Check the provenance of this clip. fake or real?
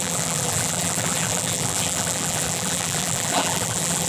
fake